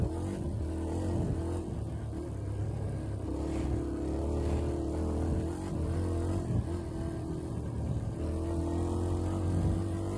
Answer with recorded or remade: recorded